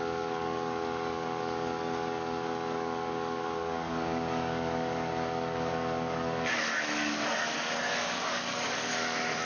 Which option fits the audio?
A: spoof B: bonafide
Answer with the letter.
A